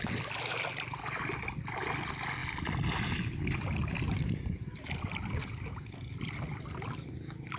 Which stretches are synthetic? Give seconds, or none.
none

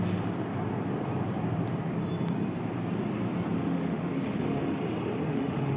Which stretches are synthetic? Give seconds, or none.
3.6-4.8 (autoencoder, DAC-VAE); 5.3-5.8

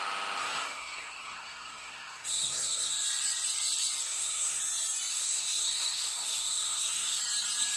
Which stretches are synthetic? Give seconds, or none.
0.4-2.9 (codec, SNAC); 4.0-4.6; 5.1-7.2

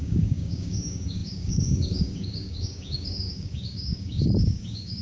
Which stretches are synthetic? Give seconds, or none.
0.0-5.0 (codec, DAC)